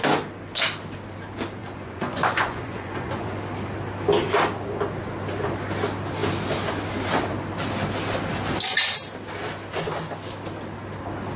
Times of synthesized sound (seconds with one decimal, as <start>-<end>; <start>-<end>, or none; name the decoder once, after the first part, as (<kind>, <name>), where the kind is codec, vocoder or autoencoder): 1.6-3.3 (vocoder, Vocos)